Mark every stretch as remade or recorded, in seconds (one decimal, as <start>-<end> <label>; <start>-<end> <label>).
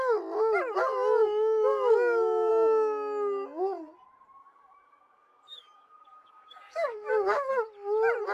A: 0.0-1.2 recorded; 1.2-2.5 remade; 2.5-4.4 recorded; 4.4-7.5 remade; 7.5-8.3 recorded